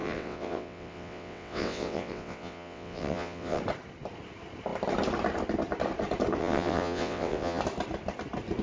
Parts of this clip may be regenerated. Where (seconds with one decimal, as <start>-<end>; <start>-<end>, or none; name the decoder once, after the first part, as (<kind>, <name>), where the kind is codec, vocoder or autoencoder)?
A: 0.0-3.6 (vocoder, WaveNeXt); 6.4-7.6